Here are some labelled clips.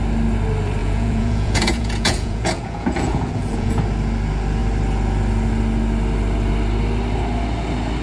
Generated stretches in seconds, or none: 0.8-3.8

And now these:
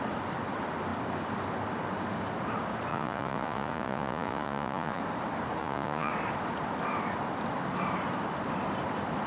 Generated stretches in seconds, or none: 2.9-5.0; 5.6-6.1

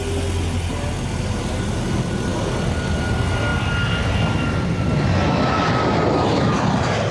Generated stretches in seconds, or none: none

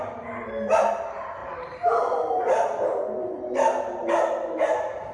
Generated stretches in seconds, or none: 1.4-2.4

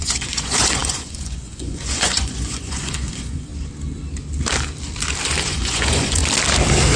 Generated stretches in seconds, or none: 0.0-3.5; 5.4-6.2

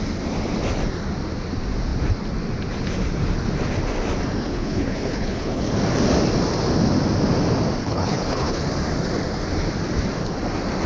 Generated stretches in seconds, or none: 4.5-5.6; 7.8-8.6

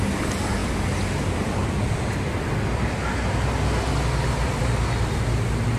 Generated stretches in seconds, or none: none

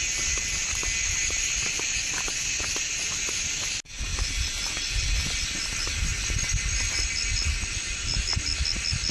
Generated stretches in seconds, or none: none